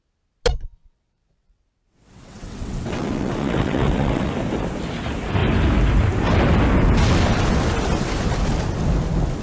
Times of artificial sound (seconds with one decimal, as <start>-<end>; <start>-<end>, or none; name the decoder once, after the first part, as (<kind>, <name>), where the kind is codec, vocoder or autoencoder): 0.8-4.3 (vocoder, WaveNeXt)